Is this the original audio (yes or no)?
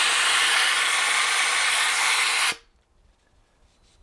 yes